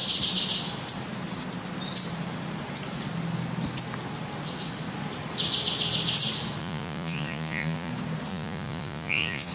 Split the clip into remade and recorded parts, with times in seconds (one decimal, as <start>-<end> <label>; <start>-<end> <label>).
0.0-6.6 recorded; 6.6-7.9 remade; 7.9-8.3 recorded; 8.3-9.5 remade